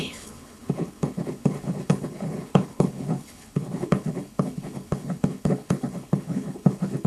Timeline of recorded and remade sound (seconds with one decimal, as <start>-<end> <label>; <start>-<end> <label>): 0.0-7.1 remade